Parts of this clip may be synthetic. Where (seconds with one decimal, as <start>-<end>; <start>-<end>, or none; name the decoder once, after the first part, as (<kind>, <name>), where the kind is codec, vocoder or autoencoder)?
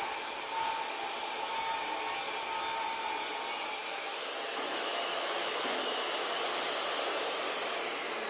3.8-6.4 (autoencoder, DAC-VAE)